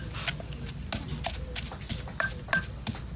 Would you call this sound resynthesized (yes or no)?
no